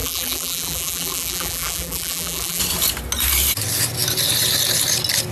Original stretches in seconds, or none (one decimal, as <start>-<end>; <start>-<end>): 2.6-5.3